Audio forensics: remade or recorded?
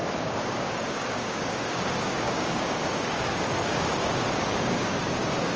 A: remade